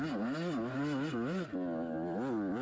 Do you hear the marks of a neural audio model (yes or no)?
no